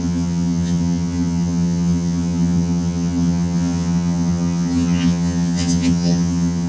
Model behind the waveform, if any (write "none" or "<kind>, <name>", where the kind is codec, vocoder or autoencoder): vocoder, HiFi-GAN